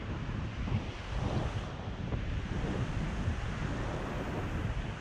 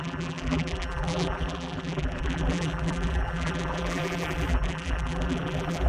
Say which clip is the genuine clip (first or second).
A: first